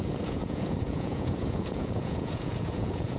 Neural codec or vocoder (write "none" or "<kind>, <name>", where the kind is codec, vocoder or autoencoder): vocoder, Vocos